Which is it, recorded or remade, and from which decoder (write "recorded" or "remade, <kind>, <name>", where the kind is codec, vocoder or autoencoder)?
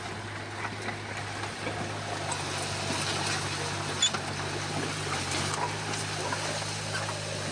recorded